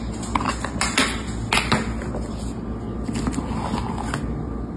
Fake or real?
real